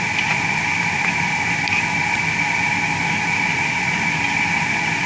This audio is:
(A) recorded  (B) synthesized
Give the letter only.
A